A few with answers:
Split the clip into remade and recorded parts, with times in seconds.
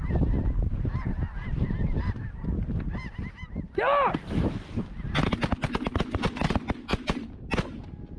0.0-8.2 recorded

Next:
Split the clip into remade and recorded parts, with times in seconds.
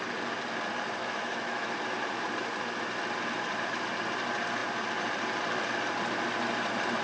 0.0-1.0 recorded; 1.0-1.7 remade; 1.7-7.0 recorded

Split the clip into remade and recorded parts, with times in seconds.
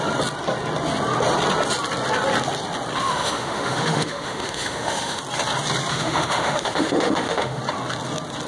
0.0-3.0 recorded; 3.0-5.2 remade; 5.2-5.9 recorded; 5.9-7.6 remade; 7.6-8.5 recorded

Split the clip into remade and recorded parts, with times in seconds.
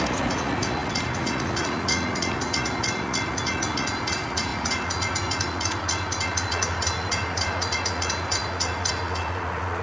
0.0-9.8 remade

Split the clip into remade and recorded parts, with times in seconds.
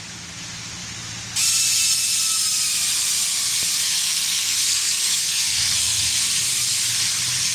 0.0-4.0 recorded; 4.0-6.0 remade; 6.0-7.5 recorded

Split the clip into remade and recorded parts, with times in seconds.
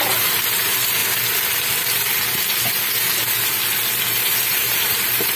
0.0-1.0 remade; 1.0-4.2 recorded; 4.2-5.4 remade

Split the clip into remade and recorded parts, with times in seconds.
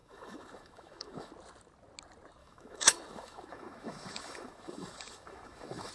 0.0-1.3 remade; 1.3-2.4 recorded; 2.4-5.9 remade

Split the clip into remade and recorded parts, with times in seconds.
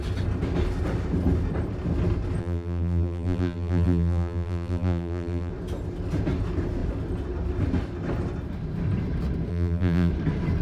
0.0-2.4 recorded; 2.4-5.5 remade; 5.5-9.5 recorded; 9.5-10.1 remade; 10.1-10.6 recorded